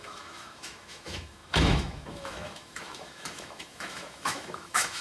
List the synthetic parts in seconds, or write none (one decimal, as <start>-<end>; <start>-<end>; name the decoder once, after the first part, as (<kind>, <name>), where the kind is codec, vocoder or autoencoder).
0.0-5.0 (autoencoder, DAC-VAE)